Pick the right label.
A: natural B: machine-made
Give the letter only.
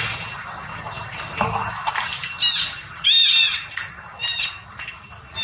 A